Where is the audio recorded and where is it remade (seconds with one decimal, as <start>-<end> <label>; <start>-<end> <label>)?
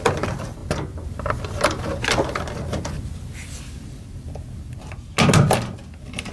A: 0.0-6.3 recorded